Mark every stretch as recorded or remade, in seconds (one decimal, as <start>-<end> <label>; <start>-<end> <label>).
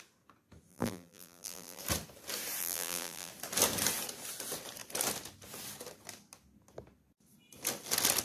0.0-0.7 recorded; 0.7-1.8 remade; 1.8-2.6 recorded; 2.6-3.3 remade; 3.3-8.2 recorded